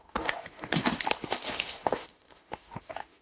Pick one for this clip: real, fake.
fake